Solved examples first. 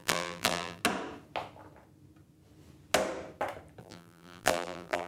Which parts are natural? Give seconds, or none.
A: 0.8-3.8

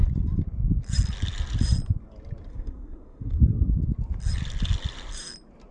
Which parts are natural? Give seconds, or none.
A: 0.0-2.5; 3.7-5.7

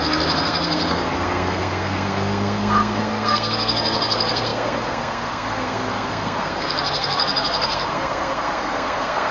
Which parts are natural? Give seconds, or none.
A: none

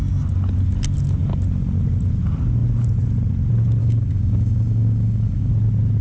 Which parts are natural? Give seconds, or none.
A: 0.0-3.8; 5.5-6.0

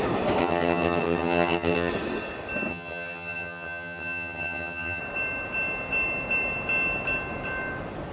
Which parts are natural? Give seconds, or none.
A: 0.0-0.4; 1.9-2.7; 5.0-8.1

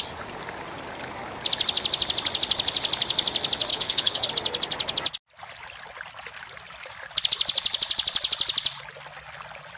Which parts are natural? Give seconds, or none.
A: 0.0-3.7; 4.3-9.8